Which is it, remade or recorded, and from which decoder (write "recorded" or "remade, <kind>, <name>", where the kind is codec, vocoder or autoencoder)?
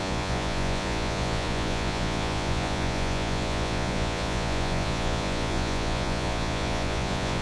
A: remade, vocoder, Vocos